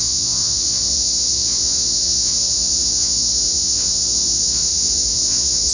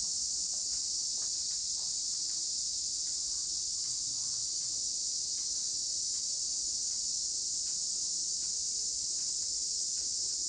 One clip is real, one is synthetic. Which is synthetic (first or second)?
first